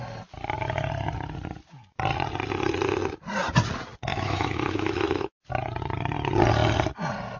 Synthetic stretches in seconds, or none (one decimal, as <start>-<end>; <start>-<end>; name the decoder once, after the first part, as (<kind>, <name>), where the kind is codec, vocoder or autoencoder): 4.1-5.3 (autoencoder, DAC-VAE)